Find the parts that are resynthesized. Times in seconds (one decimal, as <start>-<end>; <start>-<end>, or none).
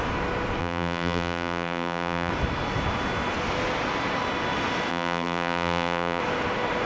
0.6-2.3; 4.9-6.2